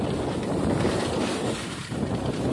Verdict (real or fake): real